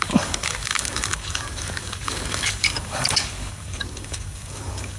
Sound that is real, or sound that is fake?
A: fake